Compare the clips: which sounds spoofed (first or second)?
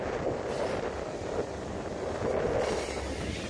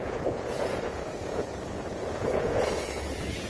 second